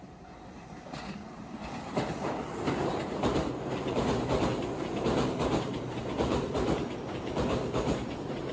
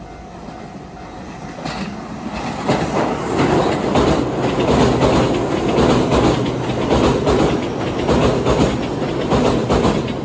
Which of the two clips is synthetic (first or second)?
first